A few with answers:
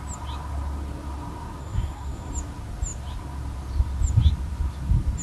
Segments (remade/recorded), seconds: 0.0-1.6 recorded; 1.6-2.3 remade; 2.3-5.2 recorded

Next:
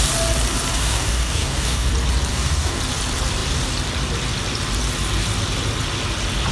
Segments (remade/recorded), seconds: 0.0-0.7 recorded; 0.7-1.9 remade; 1.9-2.3 recorded; 2.3-2.8 remade; 2.8-6.5 recorded

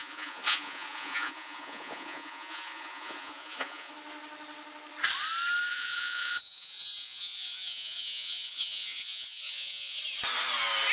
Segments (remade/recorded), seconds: 0.0-3.9 remade; 3.9-5.7 recorded; 5.7-10.0 remade; 10.0-10.9 recorded